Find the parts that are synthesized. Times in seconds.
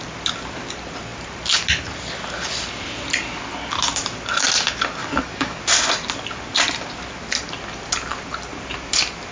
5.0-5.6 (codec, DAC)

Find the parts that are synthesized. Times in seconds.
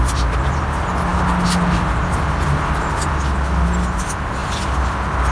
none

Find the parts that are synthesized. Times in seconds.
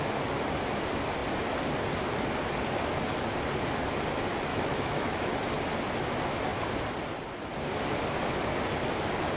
4.5-5.4 (autoencoder, DAC-VAE)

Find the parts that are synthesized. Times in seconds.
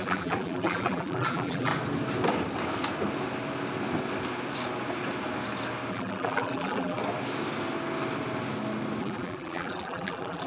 0.0-1.7 (vocoder, BigVGAN v2); 5.9-7.0; 9.0-10.5